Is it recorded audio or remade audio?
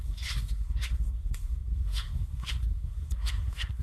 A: remade